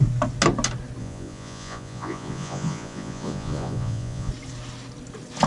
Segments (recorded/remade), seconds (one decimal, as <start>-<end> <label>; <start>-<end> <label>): 0.0-1.0 recorded; 1.0-4.3 remade; 4.3-5.5 recorded